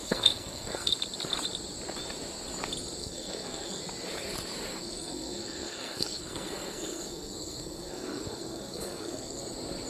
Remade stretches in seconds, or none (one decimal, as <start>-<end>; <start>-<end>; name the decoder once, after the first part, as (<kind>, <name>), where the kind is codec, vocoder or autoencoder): 0.0-0.9 (codec, SNAC); 3.0-3.8; 4.7-9.4